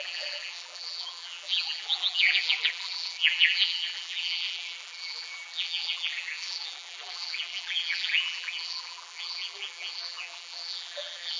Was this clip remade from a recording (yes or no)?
yes